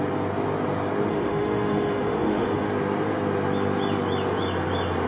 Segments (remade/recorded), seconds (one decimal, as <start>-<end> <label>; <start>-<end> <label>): 0.0-1.1 recorded; 1.1-2.7 remade; 2.7-5.1 recorded